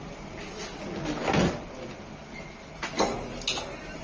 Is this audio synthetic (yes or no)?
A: no